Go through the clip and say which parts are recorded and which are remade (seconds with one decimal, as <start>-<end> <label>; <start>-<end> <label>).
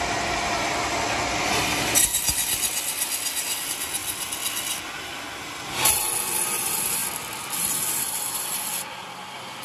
0.0-9.6 recorded